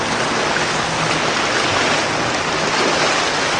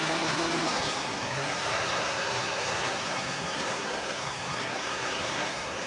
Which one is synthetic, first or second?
second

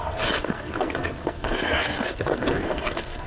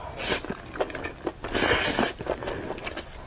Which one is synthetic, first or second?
first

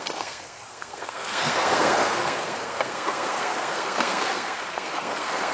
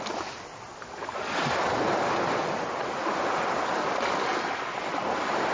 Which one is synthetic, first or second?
first